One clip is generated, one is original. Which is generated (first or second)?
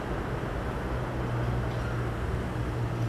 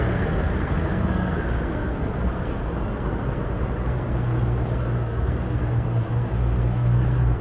second